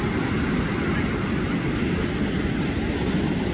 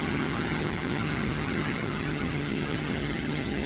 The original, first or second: first